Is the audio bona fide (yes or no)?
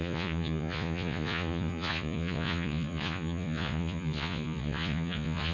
no